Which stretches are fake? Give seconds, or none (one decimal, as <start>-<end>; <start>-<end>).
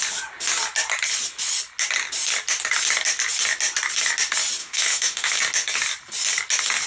4.6-5.4